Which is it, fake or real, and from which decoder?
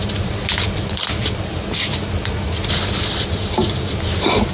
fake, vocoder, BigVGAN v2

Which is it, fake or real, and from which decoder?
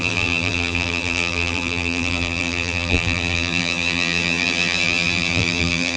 fake, vocoder, BigVGAN v2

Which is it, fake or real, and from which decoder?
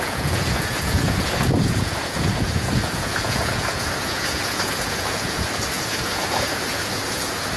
fake, vocoder, Vocos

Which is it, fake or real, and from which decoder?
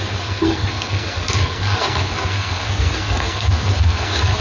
fake, codec, SNAC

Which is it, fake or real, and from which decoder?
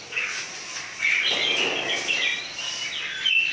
real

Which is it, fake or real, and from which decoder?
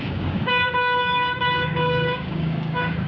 fake, codec, DAC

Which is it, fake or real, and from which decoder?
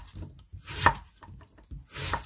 real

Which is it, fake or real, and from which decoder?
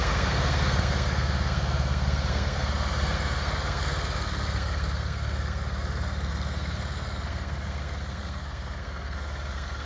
fake, codec, SNAC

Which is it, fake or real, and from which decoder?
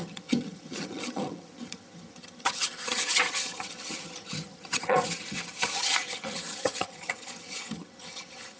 fake, vocoder, HiFi-GAN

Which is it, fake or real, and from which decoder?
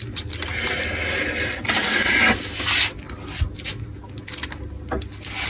real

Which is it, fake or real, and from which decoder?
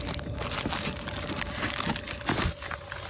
real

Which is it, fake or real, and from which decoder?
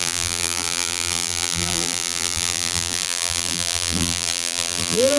fake, vocoder, BigVGAN v2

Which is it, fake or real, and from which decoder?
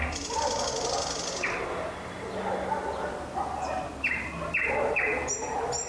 real